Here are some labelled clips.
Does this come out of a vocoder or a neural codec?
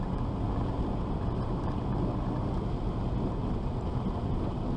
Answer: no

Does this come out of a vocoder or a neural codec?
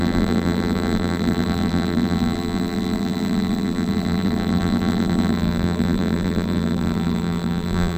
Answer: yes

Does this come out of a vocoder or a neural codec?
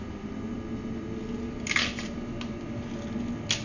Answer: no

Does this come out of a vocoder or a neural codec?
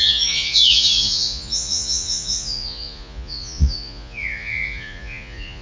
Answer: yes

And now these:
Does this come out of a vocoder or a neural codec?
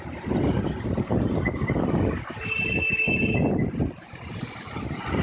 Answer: no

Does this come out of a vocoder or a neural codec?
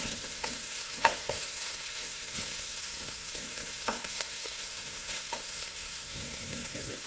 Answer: yes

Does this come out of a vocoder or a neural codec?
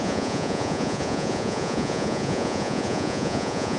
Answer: yes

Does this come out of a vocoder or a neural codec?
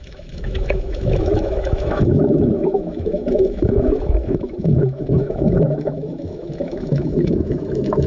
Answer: yes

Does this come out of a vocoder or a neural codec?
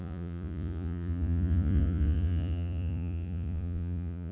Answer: yes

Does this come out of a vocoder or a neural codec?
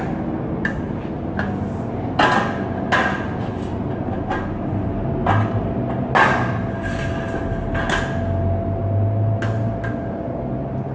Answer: no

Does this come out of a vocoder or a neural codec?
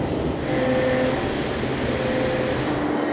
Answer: no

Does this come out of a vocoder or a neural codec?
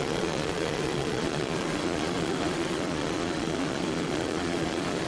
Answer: yes